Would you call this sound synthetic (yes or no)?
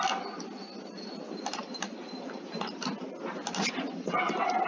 no